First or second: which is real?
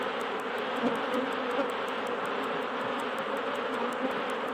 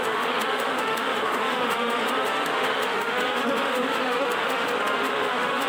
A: first